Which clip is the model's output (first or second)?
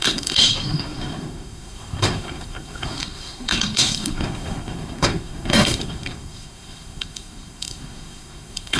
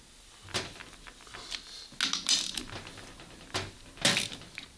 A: first